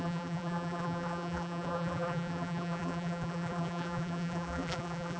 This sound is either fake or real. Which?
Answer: fake